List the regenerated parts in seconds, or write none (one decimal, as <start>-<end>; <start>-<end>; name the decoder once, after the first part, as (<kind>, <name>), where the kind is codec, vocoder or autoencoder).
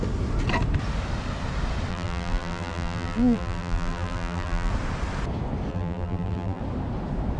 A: 1.9-4.7 (vocoder, BigVGAN v2); 5.7-6.6